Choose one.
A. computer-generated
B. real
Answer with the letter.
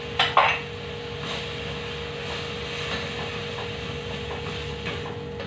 B